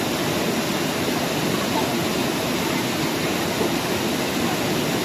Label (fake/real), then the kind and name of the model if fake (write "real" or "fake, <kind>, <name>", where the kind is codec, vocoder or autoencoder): real